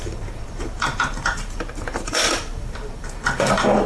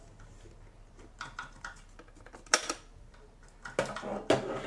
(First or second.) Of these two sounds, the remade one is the first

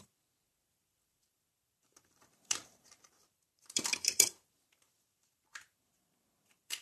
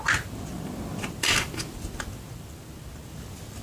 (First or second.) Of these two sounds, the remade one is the first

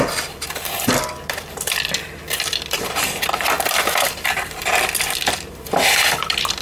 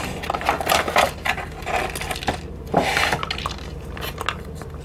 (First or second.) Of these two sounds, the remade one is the first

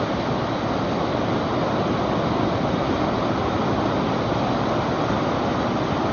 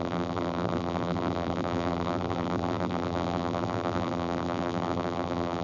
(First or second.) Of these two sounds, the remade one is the second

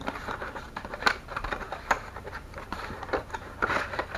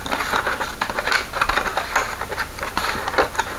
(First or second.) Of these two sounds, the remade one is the first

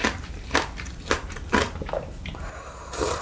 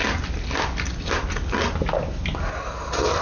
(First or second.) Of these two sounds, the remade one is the first